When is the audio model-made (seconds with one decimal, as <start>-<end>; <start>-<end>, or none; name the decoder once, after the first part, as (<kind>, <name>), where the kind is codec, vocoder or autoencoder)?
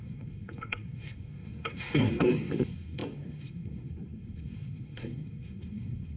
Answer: 0.0-6.2 (codec, SNAC)